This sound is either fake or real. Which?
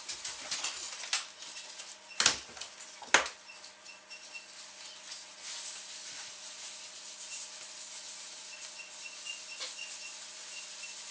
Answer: real